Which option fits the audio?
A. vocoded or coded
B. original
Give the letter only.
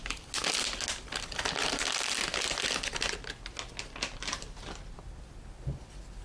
B